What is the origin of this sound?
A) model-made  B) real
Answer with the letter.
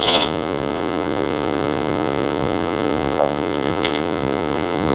A